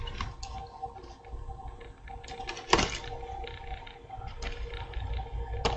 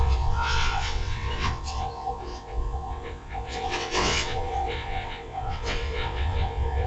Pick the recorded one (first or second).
first